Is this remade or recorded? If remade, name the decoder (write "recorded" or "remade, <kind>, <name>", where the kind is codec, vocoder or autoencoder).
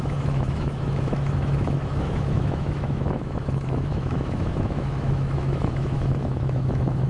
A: remade, autoencoder, DAC-VAE